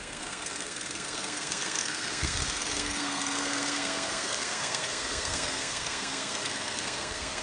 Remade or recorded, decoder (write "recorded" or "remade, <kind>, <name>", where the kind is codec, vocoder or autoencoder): remade, codec, SNAC